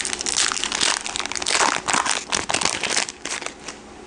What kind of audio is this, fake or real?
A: real